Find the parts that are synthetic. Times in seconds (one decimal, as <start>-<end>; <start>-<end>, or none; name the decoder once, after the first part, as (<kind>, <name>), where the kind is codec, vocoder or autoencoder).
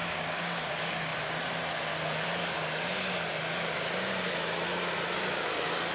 0.0-0.7 (codec, DAC)